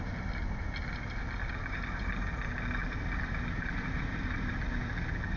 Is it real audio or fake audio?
real